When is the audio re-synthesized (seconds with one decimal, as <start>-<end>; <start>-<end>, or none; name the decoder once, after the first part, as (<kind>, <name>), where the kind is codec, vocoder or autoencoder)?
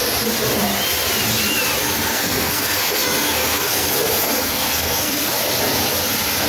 1.8-5.3 (codec, SNAC)